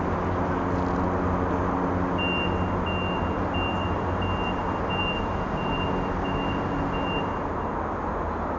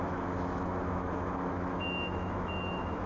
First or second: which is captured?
first